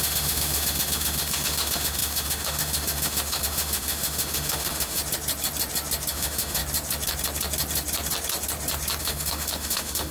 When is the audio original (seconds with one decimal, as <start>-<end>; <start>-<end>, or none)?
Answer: 5.0-6.1; 6.6-9.0